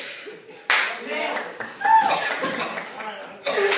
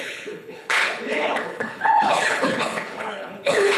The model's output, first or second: second